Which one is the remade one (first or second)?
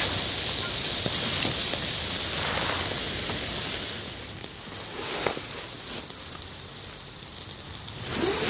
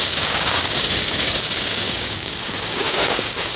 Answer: second